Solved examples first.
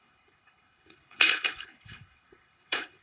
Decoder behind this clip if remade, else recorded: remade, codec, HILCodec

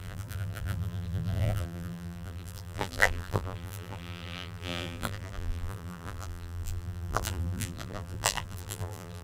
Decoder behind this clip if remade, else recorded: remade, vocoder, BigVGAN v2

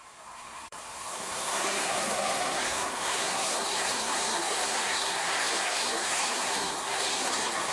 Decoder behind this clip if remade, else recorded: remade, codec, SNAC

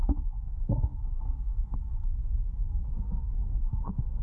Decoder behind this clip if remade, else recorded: remade, codec, SNAC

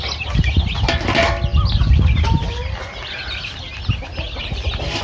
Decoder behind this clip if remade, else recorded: recorded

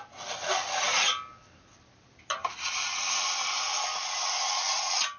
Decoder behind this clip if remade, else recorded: recorded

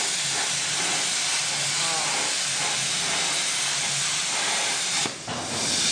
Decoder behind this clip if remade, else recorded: recorded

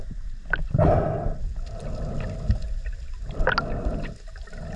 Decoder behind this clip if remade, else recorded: recorded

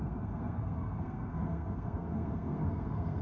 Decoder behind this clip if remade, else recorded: remade, codec, SNAC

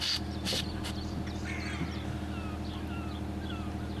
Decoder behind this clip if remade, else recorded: recorded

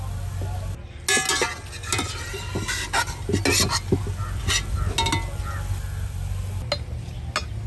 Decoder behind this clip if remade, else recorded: recorded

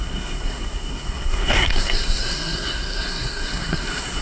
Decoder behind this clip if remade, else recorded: remade, codec, SNAC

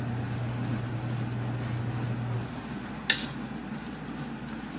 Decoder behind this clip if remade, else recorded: recorded